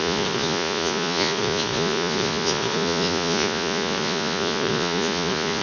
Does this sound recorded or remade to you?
remade